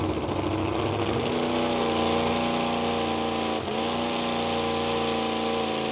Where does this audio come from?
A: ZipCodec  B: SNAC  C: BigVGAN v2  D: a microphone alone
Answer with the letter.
D